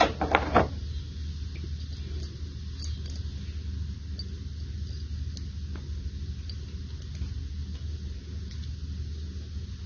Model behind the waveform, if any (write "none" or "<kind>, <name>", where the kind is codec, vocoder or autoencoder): none